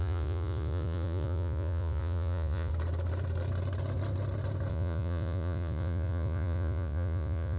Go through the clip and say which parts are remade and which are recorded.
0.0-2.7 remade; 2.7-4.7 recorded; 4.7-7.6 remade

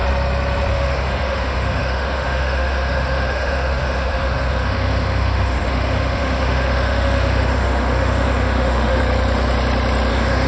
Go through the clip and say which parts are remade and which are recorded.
0.0-0.7 recorded; 0.7-9.0 remade; 9.0-10.1 recorded; 10.1-10.5 remade

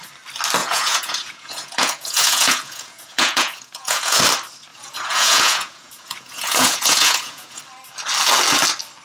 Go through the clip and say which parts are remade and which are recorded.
0.0-0.6 recorded; 0.6-4.2 remade; 4.2-4.7 recorded; 4.7-7.6 remade; 7.6-9.0 recorded

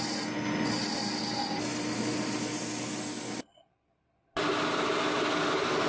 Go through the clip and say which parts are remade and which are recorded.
0.0-5.9 recorded

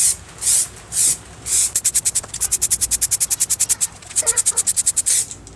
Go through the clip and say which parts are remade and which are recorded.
0.0-0.6 recorded; 0.6-4.0 remade; 4.0-5.6 recorded

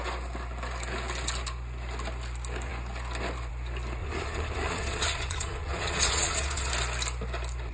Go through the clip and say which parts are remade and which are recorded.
0.0-4.0 recorded; 4.0-6.7 remade; 6.7-7.7 recorded

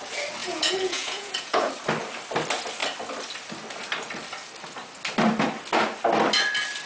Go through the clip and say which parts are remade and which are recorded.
0.0-0.4 recorded; 0.4-1.7 remade; 1.7-6.9 recorded

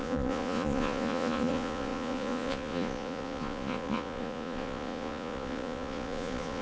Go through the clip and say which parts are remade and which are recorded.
0.0-6.6 remade